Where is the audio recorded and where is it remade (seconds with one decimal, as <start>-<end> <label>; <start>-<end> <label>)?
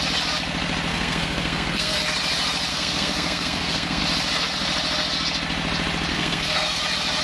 0.0-0.9 recorded; 0.9-2.0 remade; 2.0-2.7 recorded; 2.7-4.0 remade; 4.0-6.1 recorded; 6.1-6.8 remade; 6.8-7.2 recorded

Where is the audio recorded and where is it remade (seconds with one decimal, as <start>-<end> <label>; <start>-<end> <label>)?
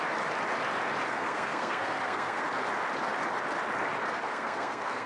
0.0-1.1 recorded; 1.1-2.4 remade; 2.4-4.3 recorded; 4.3-5.1 remade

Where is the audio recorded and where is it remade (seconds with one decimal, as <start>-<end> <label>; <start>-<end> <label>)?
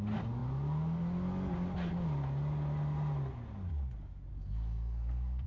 0.0-4.3 recorded; 4.3-5.5 remade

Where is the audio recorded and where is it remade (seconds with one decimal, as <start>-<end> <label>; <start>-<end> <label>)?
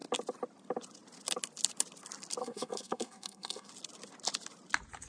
0.0-2.4 recorded; 2.4-3.7 remade; 3.7-5.1 recorded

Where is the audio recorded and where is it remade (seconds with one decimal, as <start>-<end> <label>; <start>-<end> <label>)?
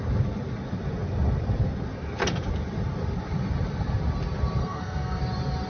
0.0-4.6 recorded; 4.6-5.2 remade; 5.2-5.7 recorded